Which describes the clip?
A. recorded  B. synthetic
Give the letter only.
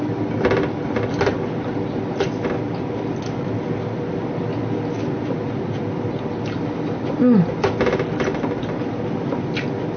A